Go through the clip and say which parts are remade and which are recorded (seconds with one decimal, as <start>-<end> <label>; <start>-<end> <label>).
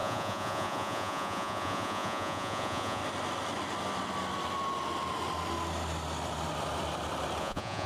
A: 0.0-3.0 remade; 3.0-7.4 recorded; 7.4-7.9 remade